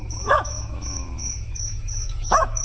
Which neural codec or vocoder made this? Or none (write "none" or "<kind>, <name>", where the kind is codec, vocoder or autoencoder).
autoencoder, DAC-VAE